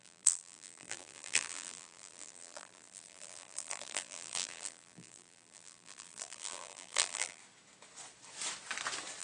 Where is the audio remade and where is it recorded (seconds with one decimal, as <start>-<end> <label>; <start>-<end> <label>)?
0.0-7.4 remade; 7.4-9.2 recorded